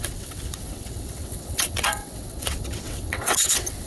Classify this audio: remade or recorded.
remade